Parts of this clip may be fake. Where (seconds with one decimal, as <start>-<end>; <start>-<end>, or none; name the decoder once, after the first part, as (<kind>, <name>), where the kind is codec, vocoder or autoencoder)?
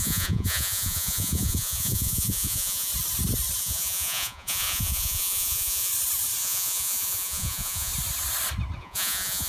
0.0-2.9 (vocoder, Vocos); 3.6-5.9; 6.4-7.9; 8.8-9.5